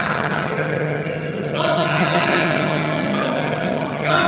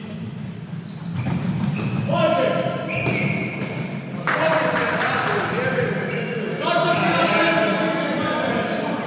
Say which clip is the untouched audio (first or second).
second